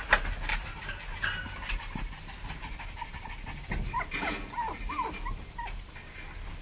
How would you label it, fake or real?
real